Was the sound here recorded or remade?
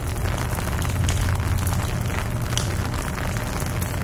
recorded